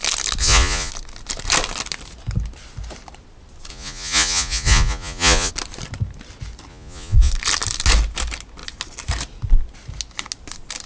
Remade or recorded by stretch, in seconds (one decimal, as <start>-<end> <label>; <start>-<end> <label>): 0.0-0.4 recorded; 0.4-0.9 remade; 0.9-3.7 recorded; 3.7-5.5 remade; 5.5-6.7 recorded; 6.7-7.3 remade; 7.3-10.9 recorded